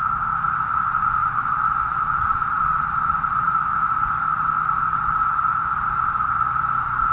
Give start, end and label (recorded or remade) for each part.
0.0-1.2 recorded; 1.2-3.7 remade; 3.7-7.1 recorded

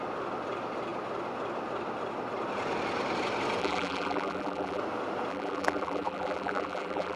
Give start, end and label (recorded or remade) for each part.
0.0-3.6 recorded; 3.6-4.8 remade; 4.8-5.3 recorded; 5.3-7.2 remade

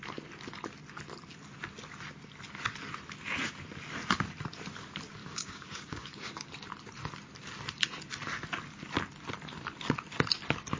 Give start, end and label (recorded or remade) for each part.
0.0-5.2 recorded; 5.2-6.5 remade; 6.5-10.8 recorded

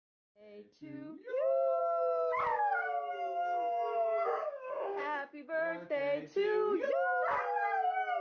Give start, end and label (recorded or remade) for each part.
0.0-0.6 recorded; 0.6-1.8 remade; 1.8-2.5 recorded; 2.5-6.0 remade; 6.0-8.2 recorded

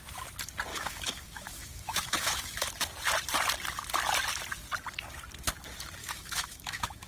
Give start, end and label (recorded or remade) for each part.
0.0-0.7 recorded; 0.7-2.7 remade; 2.7-6.0 recorded; 6.0-7.1 remade

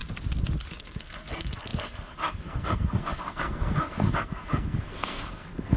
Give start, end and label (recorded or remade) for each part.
0.0-0.7 recorded; 0.7-5.8 remade

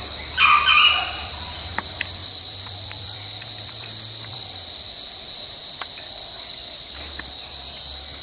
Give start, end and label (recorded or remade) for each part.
0.0-1.2 recorded; 1.2-1.7 remade; 1.7-2.2 recorded; 2.2-6.3 remade; 6.3-8.2 recorded

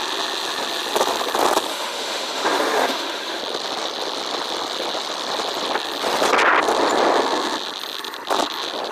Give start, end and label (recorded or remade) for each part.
0.0-1.7 recorded; 1.7-3.4 remade; 3.4-8.9 recorded